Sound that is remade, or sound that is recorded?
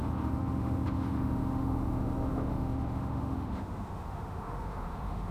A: remade